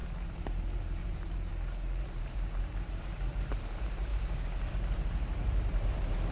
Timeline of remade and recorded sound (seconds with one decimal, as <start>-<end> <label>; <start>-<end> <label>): 0.0-1.5 remade; 1.5-2.0 recorded; 2.0-4.1 remade; 4.1-4.7 recorded; 4.7-6.3 remade